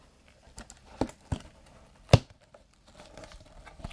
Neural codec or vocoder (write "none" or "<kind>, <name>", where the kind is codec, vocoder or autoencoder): none